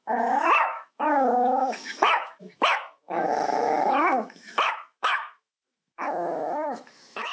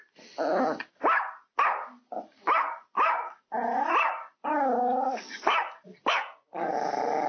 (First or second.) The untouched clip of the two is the second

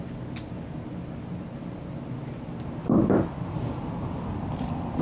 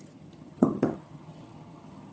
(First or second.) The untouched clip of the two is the first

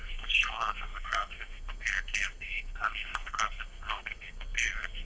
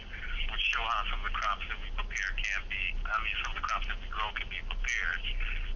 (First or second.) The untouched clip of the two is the second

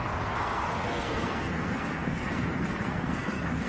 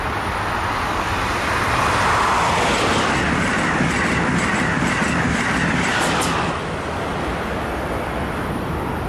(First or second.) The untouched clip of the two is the second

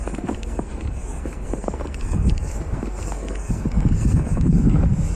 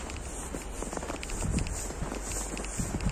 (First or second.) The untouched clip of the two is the second